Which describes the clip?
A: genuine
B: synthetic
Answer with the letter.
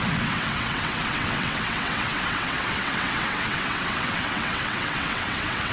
B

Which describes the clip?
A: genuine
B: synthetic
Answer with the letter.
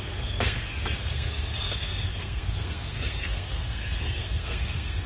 B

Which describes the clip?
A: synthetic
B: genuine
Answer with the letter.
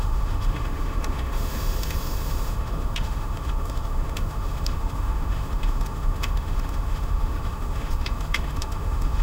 A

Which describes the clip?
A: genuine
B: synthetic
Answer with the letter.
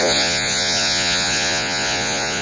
B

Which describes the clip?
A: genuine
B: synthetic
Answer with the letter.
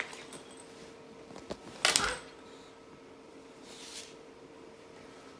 A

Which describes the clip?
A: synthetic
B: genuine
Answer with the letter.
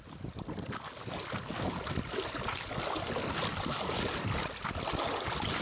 B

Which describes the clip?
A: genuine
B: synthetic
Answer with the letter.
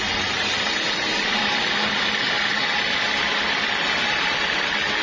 A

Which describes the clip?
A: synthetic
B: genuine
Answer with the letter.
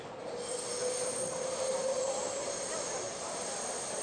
B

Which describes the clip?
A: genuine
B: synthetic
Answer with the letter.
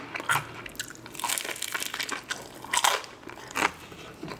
A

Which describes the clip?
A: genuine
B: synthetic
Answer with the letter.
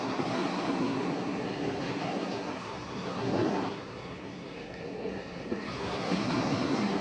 B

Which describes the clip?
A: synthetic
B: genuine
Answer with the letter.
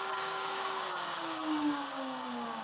A